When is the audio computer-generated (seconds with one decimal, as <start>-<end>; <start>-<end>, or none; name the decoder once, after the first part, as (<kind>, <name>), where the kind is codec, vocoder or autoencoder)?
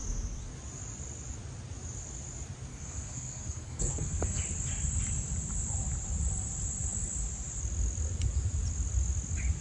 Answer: 2.7-4.4 (codec, SNAC)